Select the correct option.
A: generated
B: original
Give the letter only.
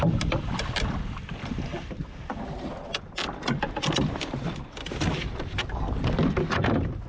B